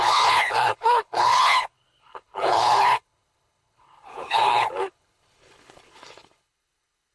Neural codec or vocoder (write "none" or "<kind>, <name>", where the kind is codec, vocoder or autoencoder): codec, HILCodec